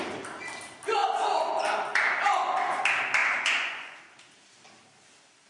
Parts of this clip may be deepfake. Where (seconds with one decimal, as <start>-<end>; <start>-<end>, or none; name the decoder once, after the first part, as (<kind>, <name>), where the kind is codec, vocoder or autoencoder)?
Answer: 1.9-2.8 (vocoder, Vocos); 3.2-4.0